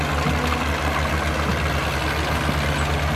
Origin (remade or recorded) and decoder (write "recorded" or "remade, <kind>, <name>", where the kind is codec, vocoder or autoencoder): recorded